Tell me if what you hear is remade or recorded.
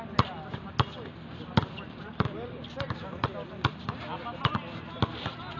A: recorded